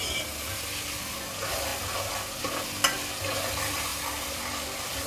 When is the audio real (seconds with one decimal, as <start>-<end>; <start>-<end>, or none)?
0.0-3.9